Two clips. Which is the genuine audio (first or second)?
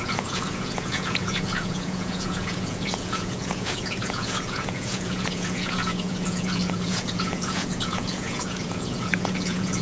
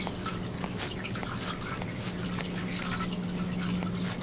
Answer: second